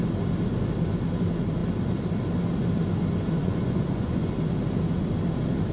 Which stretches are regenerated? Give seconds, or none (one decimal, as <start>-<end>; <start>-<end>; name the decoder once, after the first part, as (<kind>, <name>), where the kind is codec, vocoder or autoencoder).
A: 3.4-4.3 (vocoder, Vocos)

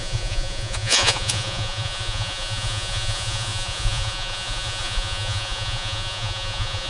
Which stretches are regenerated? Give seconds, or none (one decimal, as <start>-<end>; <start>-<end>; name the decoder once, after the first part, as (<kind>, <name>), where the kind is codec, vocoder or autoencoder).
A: 0.0-6.9 (vocoder, Vocos)